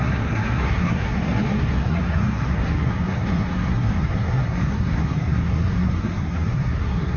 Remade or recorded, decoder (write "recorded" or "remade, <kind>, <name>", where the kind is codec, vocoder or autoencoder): remade, codec, SNAC